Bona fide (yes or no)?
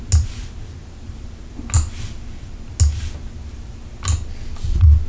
yes